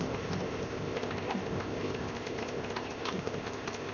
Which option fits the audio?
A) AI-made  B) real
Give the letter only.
A